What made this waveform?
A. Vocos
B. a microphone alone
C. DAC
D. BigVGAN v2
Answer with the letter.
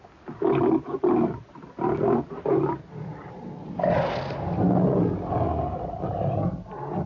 B